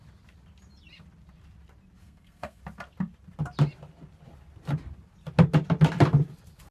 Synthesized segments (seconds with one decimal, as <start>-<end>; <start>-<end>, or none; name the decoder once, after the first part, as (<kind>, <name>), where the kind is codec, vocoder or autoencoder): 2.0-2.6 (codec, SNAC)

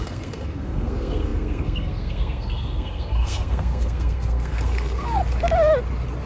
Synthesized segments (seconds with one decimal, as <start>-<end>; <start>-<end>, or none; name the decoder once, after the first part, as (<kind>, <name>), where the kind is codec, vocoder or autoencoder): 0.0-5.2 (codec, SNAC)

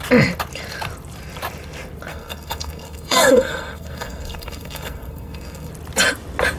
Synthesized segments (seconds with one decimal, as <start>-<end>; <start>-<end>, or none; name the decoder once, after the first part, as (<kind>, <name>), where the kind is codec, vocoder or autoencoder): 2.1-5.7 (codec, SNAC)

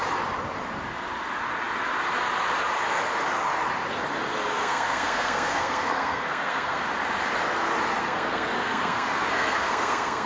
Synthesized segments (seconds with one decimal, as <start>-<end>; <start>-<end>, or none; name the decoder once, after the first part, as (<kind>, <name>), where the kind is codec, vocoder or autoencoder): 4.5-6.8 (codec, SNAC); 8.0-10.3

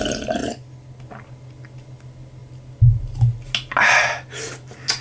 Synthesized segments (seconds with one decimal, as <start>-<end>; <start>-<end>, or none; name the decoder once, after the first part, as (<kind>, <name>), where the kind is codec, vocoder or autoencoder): none

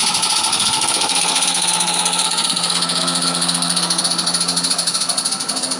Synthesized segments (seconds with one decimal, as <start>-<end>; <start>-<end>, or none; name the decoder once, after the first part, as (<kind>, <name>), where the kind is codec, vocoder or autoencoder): 0.5-4.0 (codec, SNAC)

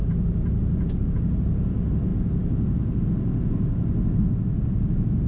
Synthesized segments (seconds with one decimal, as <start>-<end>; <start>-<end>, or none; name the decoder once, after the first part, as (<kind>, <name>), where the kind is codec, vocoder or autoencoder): none

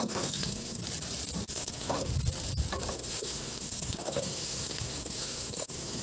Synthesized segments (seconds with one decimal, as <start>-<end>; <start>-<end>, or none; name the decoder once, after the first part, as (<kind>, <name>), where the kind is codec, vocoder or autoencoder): 0.0-0.8 (codec, SNAC); 1.5-2.1; 2.9-6.0